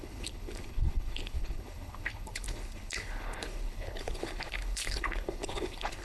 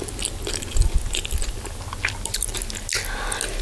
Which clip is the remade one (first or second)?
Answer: first